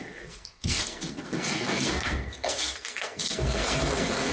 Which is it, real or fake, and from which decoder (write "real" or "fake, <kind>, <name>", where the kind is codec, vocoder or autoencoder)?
fake, codec, SNAC